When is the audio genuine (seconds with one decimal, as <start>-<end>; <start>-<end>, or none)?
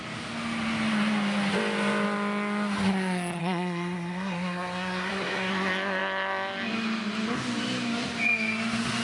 0.0-3.4; 5.5-9.0